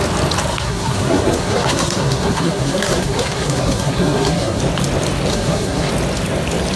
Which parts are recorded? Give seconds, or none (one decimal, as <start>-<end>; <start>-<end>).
0.0-0.5; 4.6-5.3; 5.9-6.8